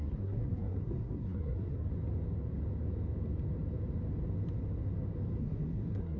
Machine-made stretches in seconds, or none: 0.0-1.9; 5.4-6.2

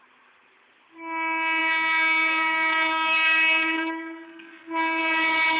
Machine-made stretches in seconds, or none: 1.6-5.0